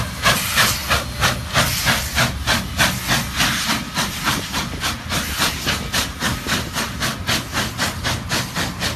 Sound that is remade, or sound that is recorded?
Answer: recorded